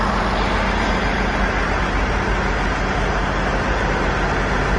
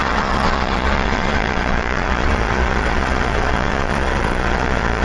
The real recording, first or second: first